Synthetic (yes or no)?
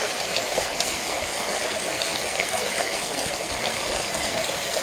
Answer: yes